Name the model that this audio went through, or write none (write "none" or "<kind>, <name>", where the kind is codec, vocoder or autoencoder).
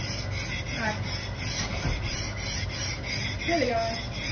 none